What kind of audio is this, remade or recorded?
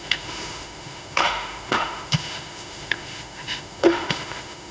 remade